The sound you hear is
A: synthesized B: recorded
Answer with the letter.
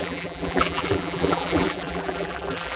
A